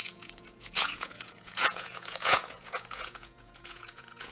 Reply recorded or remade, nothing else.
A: remade